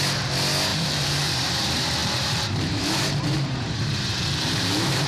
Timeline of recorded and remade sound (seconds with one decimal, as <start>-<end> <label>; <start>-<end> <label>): 0.0-0.7 recorded; 0.7-1.5 remade; 1.5-2.0 recorded; 2.0-5.1 remade